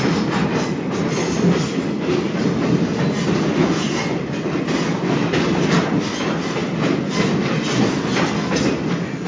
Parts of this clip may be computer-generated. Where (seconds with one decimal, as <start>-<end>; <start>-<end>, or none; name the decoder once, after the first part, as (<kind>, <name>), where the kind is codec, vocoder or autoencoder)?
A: none